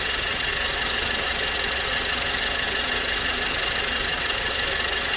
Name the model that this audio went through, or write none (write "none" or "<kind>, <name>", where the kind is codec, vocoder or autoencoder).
vocoder, Vocos